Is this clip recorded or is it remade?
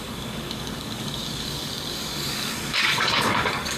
remade